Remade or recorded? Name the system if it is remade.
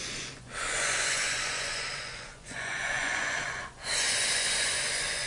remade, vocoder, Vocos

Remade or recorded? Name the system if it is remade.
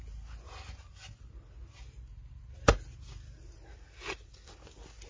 recorded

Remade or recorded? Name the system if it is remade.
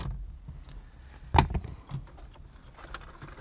recorded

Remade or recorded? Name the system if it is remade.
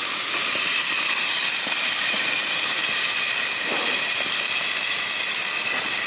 recorded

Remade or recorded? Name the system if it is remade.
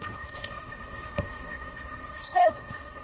remade, codec, SNAC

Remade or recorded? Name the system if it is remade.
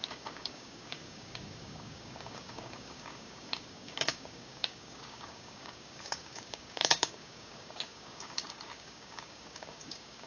remade, codec, DAC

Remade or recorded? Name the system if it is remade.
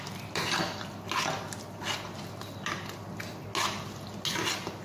recorded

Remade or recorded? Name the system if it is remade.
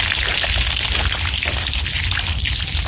recorded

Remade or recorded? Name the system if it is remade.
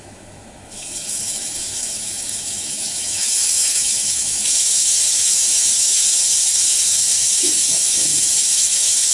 remade, autoencoder, DAC-VAE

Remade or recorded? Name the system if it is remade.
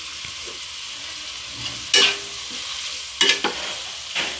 recorded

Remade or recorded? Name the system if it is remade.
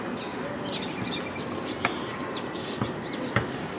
recorded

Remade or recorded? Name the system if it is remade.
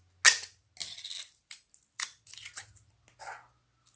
recorded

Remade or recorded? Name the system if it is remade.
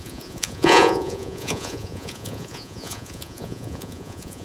remade, vocoder, Vocos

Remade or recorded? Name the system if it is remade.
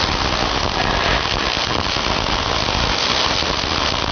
recorded